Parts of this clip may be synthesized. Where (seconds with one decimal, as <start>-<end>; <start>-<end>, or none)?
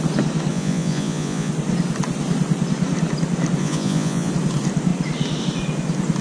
0.5-1.5; 3.6-4.3